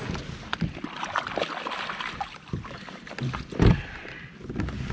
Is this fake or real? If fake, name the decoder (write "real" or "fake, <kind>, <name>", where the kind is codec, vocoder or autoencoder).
real